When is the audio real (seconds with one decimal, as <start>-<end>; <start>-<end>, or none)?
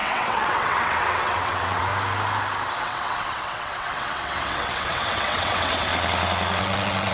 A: 1.9-2.8; 5.9-6.6